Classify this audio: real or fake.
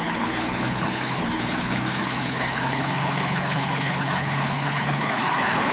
fake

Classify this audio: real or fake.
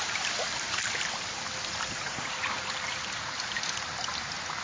real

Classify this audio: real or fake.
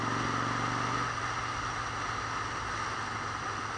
real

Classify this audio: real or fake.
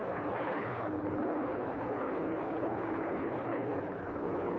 fake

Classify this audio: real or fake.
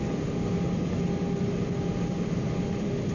real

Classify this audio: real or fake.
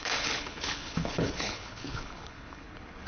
fake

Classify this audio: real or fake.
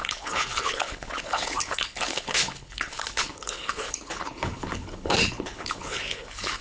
fake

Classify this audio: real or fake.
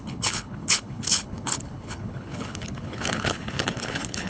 fake